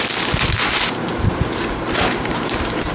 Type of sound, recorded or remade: recorded